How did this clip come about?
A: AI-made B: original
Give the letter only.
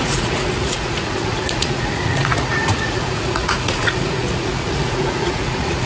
A